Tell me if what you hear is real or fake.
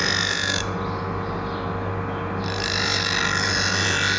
real